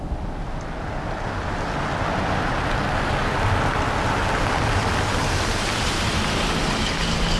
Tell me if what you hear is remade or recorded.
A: recorded